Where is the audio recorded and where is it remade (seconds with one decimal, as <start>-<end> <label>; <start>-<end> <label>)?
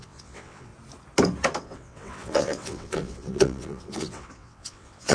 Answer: 0.0-0.7 remade; 0.7-1.6 recorded; 1.6-5.1 remade